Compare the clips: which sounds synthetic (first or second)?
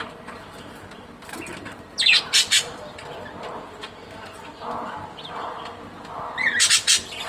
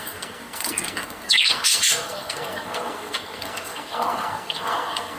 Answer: second